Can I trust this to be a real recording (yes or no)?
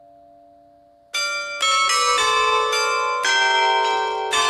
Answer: yes